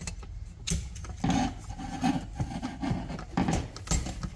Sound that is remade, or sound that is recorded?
recorded